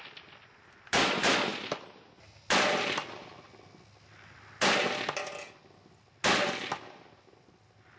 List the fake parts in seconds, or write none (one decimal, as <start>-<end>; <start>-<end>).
none